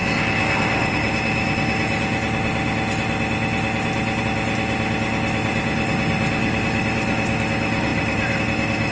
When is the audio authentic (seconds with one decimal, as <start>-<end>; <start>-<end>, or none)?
0.0-7.9; 8.4-8.9